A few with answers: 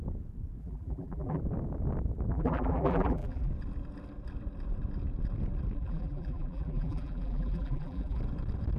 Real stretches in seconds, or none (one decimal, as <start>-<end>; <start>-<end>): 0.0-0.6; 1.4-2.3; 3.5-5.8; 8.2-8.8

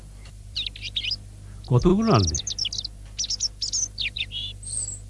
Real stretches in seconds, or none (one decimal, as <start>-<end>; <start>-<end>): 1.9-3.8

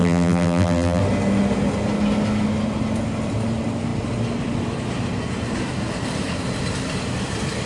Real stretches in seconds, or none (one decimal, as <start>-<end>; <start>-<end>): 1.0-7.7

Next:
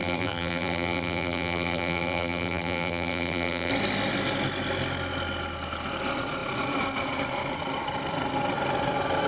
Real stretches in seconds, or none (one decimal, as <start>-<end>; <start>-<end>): 3.7-9.3

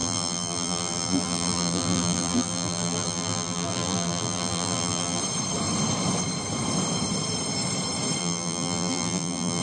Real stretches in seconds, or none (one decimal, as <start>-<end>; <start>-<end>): 5.2-8.2

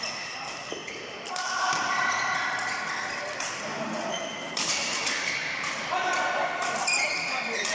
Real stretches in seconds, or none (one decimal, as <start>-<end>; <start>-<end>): 0.0-7.7

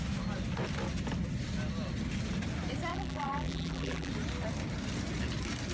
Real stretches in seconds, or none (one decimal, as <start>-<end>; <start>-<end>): 0.0-2.9; 4.1-5.7